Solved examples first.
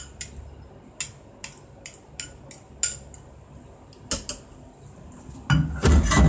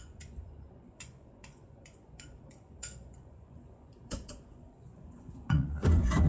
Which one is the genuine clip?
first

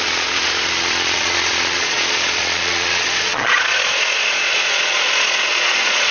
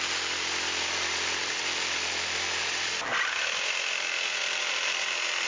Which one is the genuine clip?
second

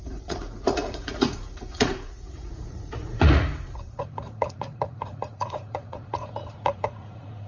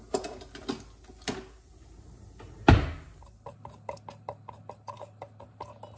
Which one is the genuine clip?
second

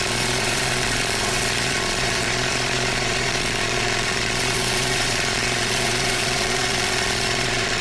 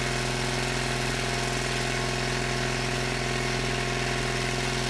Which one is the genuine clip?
second